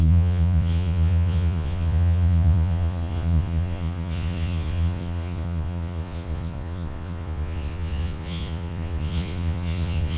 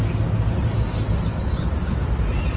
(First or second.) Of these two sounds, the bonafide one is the second